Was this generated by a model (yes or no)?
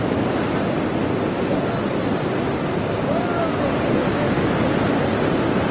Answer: no